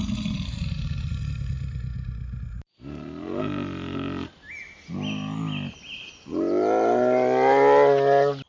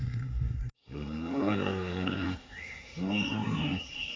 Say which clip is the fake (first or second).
second